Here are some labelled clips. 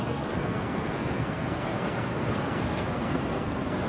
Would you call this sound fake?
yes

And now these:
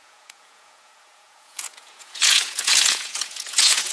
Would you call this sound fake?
yes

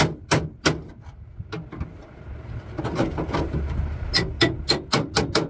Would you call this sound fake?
no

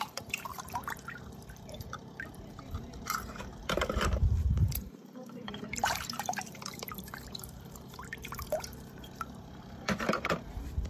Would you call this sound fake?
yes